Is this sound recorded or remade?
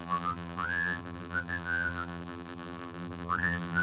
remade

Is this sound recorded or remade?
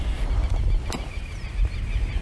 recorded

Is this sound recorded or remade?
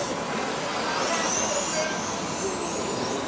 recorded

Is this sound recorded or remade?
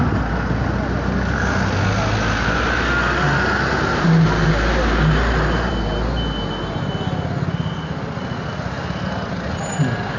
recorded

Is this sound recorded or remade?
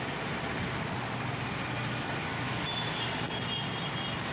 recorded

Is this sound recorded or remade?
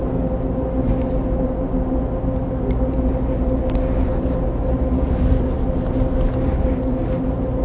recorded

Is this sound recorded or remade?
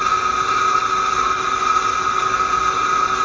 recorded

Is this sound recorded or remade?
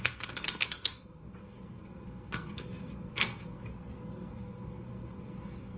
remade